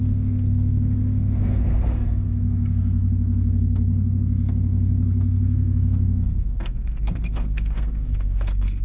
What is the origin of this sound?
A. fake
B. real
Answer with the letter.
A